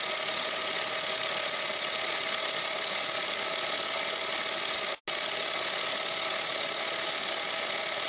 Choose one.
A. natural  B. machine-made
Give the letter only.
A